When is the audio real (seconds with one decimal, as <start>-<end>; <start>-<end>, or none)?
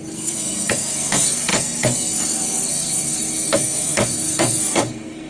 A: none